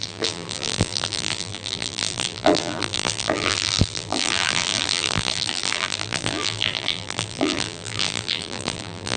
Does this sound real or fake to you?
fake